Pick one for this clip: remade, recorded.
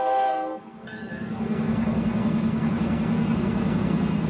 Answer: remade